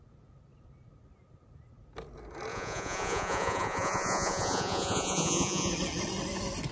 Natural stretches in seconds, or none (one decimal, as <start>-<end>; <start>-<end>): 0.0-2.5; 5.7-6.7